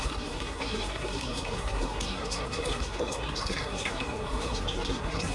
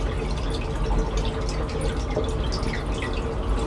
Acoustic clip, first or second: second